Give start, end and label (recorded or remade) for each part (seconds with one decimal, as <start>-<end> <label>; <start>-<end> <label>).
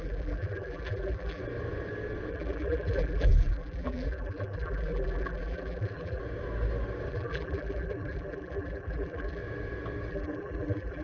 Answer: 0.0-1.4 remade; 1.4-2.3 recorded; 2.3-6.2 remade; 6.2-7.1 recorded; 7.1-9.4 remade; 9.4-10.1 recorded; 10.1-11.0 remade